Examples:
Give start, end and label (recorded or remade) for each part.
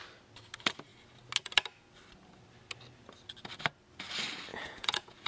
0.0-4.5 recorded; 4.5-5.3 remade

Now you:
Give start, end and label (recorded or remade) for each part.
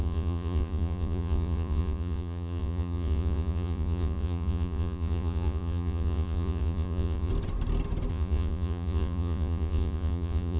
0.0-7.3 remade; 7.3-8.1 recorded; 8.1-10.6 remade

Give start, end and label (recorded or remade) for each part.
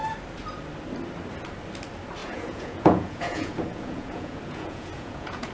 0.0-2.2 recorded; 2.2-5.5 remade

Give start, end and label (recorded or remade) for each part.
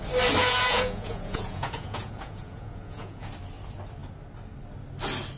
0.0-0.4 recorded; 0.4-3.3 remade; 3.3-5.4 recorded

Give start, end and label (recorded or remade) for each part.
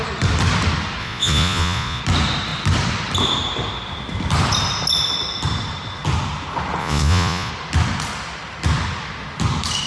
0.0-1.0 recorded; 1.0-2.0 remade; 2.0-6.8 recorded; 6.8-7.5 remade; 7.5-9.9 recorded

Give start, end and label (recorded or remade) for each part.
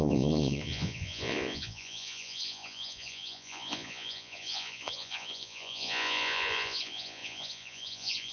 0.0-8.3 remade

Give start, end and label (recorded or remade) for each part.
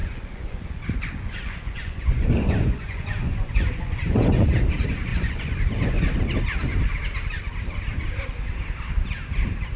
0.0-4.5 remade; 4.5-5.1 recorded; 5.1-6.0 remade; 6.0-9.8 recorded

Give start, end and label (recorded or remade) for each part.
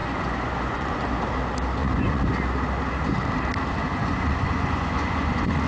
0.0-1.0 remade; 1.0-1.8 recorded; 1.8-2.3 remade; 2.3-3.8 recorded; 3.8-5.7 remade